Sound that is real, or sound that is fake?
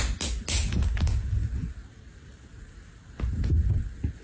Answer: real